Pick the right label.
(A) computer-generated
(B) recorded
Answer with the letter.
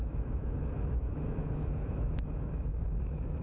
A